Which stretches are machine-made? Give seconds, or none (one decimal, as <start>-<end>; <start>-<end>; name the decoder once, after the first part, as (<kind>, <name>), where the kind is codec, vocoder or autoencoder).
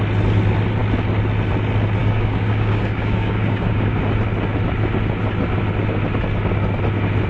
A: 2.0-4.0 (codec, DAC)